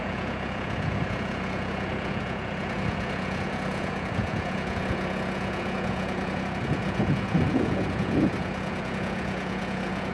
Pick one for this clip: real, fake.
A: fake